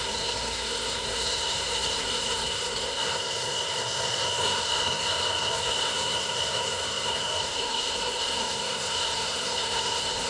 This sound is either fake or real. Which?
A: fake